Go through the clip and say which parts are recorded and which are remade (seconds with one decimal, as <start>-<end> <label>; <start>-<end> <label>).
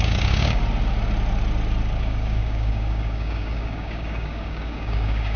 0.0-0.6 remade; 0.6-2.0 recorded; 2.0-5.4 remade